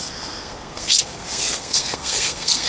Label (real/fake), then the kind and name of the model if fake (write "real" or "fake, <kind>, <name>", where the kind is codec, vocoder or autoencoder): fake, codec, SNAC